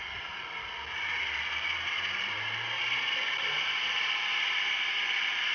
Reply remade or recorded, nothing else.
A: recorded